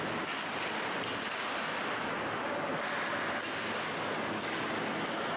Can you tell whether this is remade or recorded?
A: recorded